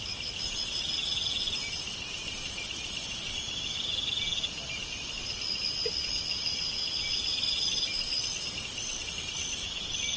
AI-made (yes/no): no